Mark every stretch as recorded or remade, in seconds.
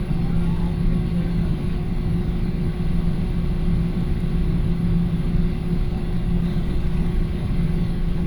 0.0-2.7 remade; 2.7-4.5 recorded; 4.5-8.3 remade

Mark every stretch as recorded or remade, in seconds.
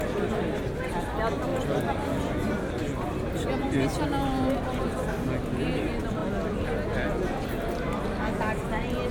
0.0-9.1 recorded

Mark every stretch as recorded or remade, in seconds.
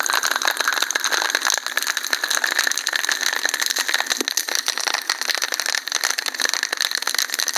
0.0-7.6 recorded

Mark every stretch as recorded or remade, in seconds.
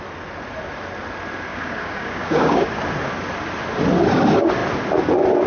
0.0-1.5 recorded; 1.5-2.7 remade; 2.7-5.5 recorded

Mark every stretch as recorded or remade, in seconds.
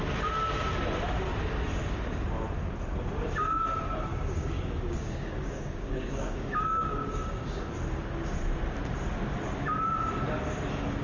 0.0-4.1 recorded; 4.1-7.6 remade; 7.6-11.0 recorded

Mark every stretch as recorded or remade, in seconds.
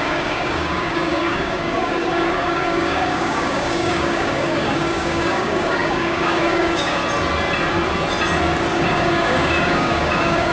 0.0-7.0 remade; 7.0-8.7 recorded; 8.7-10.5 remade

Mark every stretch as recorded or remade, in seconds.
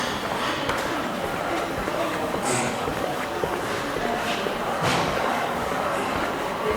0.0-1.9 recorded; 1.9-3.6 remade; 3.6-4.9 recorded; 4.9-6.2 remade; 6.2-6.8 recorded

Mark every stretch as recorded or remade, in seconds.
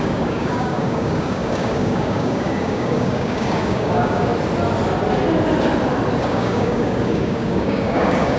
0.0-4.3 remade; 4.3-6.2 recorded; 6.2-8.4 remade